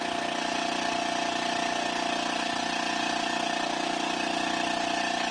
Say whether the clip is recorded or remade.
recorded